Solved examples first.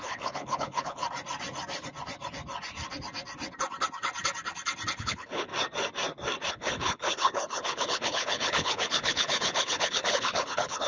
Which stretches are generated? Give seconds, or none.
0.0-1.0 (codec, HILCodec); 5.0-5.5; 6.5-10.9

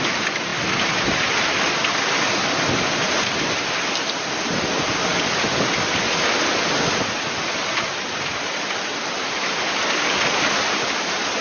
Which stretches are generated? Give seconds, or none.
none

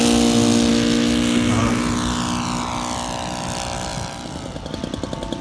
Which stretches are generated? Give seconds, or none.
none

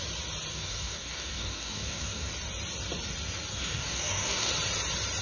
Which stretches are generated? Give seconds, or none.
0.5-2.3 (codec, DAC); 3.5-4.5

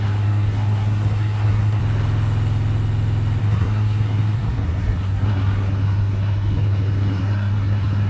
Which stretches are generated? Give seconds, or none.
0.0-1.8 (codec, SNAC); 3.4-8.1